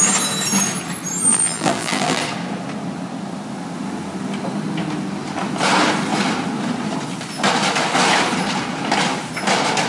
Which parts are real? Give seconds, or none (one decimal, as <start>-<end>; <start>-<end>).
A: 0.0-1.3; 2.2-9.9